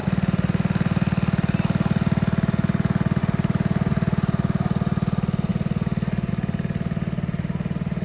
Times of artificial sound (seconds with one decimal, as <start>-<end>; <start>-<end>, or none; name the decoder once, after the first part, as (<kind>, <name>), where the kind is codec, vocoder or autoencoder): none